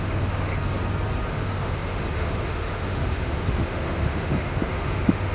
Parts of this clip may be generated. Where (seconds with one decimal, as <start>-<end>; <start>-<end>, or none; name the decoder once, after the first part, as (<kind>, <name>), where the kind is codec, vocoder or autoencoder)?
0.0-0.5 (autoencoder, DAC-VAE); 1.3-5.3